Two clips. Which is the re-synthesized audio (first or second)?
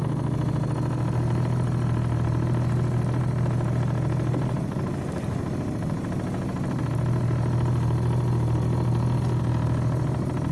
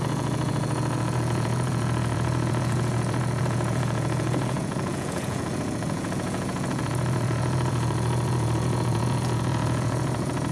second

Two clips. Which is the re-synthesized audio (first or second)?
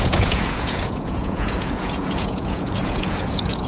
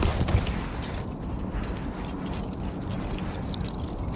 first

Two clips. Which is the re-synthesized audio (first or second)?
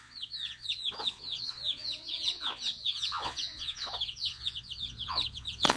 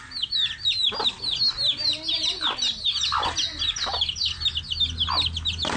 first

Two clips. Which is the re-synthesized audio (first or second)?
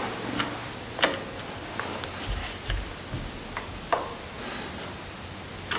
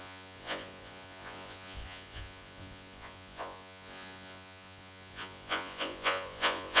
second